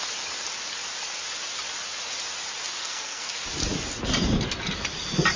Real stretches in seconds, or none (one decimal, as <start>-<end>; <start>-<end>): 0.0-2.8; 3.3-5.4

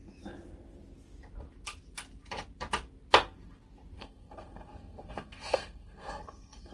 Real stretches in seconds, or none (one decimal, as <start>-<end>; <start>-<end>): 0.0-4.0

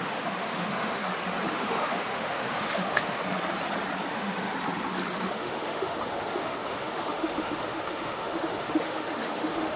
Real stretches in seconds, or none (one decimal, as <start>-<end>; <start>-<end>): 1.0-1.5; 3.2-4.1; 4.5-5.3